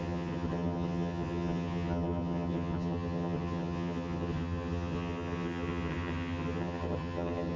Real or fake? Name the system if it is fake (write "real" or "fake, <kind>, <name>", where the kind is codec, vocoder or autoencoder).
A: fake, vocoder, HiFi-GAN